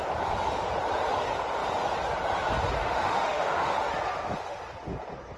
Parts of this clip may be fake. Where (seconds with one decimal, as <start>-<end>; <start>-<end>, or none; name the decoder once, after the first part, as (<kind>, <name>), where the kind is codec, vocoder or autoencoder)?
2.8-3.9 (autoencoder, DAC-VAE)